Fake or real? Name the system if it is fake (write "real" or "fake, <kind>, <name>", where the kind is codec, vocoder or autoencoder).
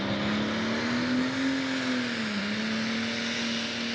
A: real